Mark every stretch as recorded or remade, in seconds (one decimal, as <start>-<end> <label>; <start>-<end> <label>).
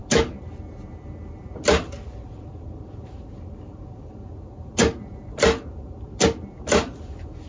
0.0-7.5 recorded